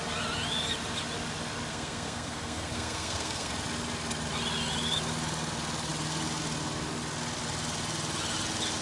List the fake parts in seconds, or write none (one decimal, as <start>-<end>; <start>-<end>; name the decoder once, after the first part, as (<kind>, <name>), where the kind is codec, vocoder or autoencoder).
1.7-3.5 (codec, SNAC)